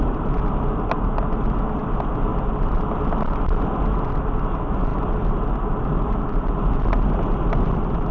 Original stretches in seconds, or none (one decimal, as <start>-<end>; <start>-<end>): 0.0-8.1